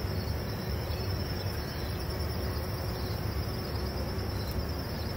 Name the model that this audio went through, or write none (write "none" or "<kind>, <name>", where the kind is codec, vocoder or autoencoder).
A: none